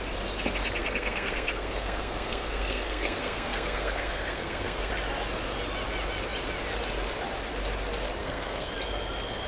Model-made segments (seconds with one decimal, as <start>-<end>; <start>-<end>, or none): 0.8-4.9; 8.2-8.7